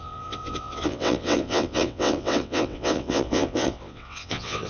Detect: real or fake fake